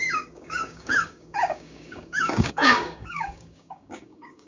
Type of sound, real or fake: fake